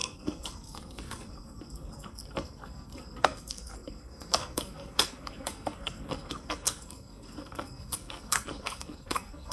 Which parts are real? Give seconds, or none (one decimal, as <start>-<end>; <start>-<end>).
none